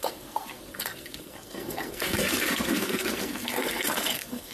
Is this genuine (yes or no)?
no